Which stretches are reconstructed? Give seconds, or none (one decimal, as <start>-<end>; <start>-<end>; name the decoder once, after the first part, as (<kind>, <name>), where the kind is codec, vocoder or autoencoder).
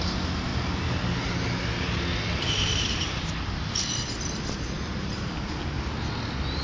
none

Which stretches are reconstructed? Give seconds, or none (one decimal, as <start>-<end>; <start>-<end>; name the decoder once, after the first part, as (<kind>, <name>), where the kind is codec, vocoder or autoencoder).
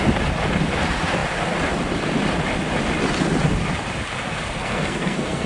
4.6-5.5 (codec, SNAC)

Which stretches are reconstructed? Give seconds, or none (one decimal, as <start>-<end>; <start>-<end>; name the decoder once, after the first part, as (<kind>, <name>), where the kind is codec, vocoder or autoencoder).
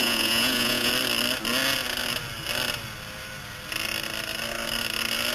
0.0-0.9 (vocoder, Vocos)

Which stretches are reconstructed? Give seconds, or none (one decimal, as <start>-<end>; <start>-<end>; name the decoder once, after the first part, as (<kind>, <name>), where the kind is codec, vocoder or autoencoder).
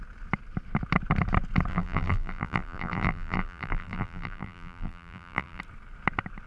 1.7-5.6 (vocoder, BigVGAN v2)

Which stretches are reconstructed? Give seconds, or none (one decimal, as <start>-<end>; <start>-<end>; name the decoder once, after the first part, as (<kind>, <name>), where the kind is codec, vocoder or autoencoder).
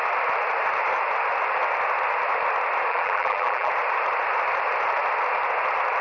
2.9-3.7 (vocoder, BigVGAN v2)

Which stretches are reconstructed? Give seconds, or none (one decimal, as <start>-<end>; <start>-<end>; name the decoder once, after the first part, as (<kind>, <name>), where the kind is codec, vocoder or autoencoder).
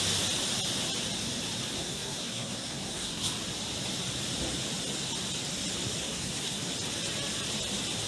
1.8-3.3 (codec, SNAC); 6.0-6.6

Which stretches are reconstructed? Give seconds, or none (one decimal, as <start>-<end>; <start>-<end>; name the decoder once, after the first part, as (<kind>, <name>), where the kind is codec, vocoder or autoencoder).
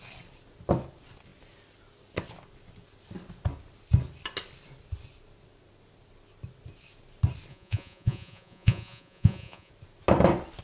7.5-9.7 (vocoder, Vocos)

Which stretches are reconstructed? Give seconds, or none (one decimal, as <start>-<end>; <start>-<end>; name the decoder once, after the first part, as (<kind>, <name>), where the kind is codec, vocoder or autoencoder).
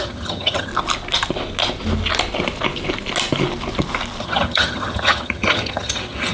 0.0-0.7 (vocoder, HiFi-GAN); 4.2-6.3